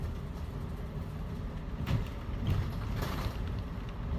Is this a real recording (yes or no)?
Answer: yes